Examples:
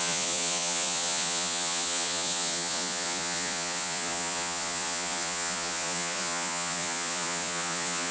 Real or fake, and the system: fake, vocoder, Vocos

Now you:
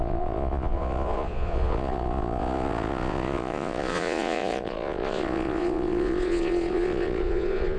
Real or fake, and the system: fake, vocoder, Vocos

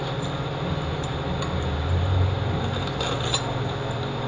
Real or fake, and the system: real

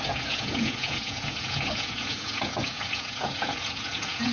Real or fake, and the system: fake, vocoder, Vocos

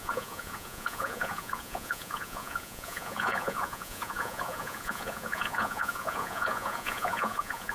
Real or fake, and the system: fake, vocoder, Vocos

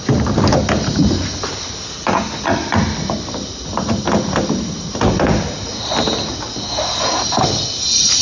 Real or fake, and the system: real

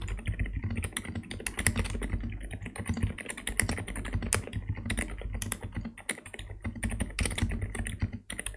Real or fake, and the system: real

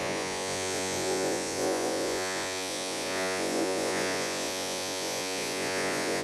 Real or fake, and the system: fake, vocoder, Vocos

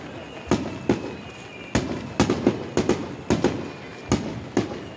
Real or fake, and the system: real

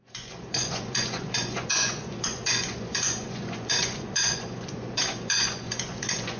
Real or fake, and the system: fake, vocoder, Vocos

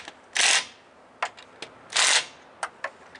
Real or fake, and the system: real